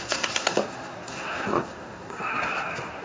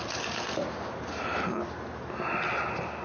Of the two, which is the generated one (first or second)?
first